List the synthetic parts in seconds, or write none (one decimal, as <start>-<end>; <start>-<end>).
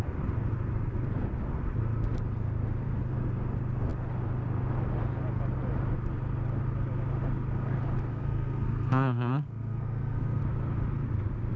8.1-10.4